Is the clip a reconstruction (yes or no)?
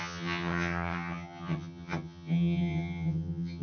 yes